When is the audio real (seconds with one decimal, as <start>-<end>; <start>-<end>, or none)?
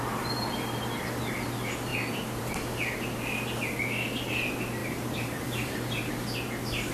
0.0-1.9; 2.4-4.8; 6.1-6.9